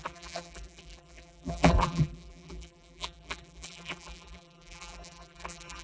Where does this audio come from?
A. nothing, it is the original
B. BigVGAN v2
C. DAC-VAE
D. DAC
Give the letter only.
B